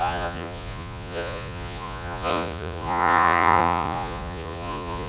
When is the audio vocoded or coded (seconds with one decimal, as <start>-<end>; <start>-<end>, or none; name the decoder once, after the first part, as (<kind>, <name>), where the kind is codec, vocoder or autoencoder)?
0.0-5.1 (vocoder, Vocos)

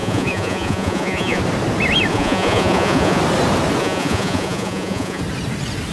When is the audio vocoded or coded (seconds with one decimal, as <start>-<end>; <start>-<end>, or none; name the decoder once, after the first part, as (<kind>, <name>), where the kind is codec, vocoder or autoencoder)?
0.0-1.4 (vocoder, Vocos); 2.1-3.2; 3.8-5.2